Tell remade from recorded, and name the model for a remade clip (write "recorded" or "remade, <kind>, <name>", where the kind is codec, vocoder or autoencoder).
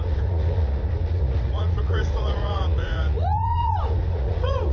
remade, vocoder, Vocos